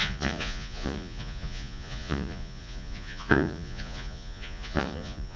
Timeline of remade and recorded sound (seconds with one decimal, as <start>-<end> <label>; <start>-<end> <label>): 0.0-5.4 remade